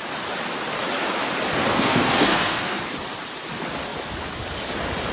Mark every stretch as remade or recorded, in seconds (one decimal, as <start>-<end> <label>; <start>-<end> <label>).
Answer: 0.0-1.7 recorded; 1.7-2.8 remade; 2.8-5.1 recorded